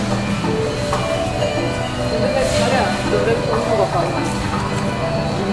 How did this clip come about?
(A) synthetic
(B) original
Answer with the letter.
B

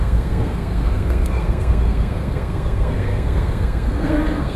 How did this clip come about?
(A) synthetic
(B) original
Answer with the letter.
A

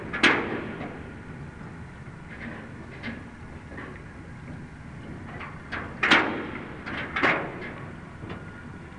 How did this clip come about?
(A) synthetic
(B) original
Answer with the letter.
B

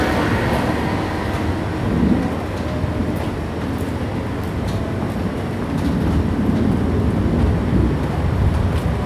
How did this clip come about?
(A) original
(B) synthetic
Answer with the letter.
A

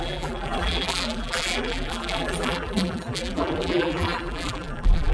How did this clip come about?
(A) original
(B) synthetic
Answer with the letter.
B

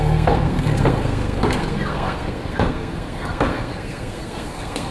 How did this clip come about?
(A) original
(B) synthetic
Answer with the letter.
B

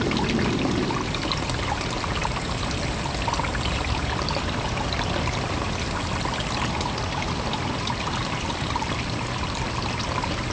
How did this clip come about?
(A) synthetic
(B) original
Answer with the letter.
A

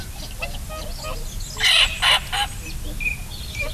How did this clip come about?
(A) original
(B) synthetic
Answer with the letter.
A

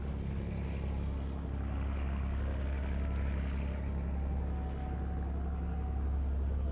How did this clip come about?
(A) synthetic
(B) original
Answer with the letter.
B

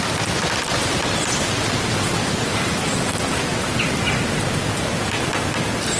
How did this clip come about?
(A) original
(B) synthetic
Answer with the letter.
A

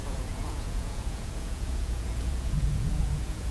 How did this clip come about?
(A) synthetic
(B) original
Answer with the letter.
A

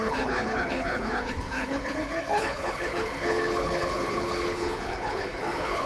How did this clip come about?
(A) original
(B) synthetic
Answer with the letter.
B